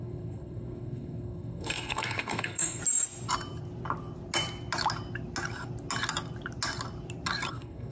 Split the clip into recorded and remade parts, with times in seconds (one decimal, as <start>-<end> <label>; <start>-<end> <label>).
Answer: 0.0-2.8 remade; 2.8-7.5 recorded; 7.5-7.9 remade